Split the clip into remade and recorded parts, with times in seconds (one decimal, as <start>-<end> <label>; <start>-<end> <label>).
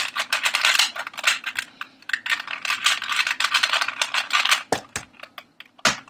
0.0-6.1 recorded